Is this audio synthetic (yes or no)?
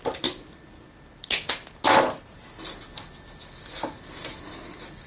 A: no